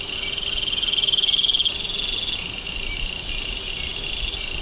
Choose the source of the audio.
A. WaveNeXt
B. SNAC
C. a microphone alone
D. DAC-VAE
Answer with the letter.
C